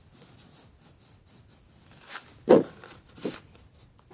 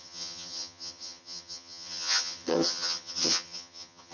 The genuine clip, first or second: first